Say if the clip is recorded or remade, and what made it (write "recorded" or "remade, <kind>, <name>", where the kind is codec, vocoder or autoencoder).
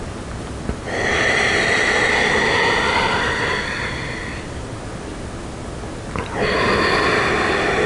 recorded